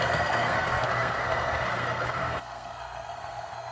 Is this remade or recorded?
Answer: remade